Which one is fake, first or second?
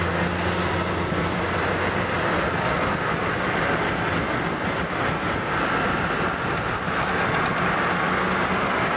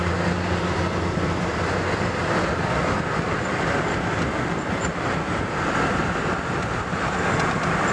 second